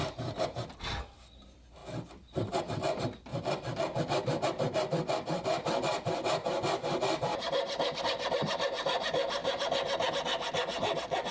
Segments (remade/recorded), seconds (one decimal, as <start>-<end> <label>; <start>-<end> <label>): 0.0-0.8 remade; 0.8-11.3 recorded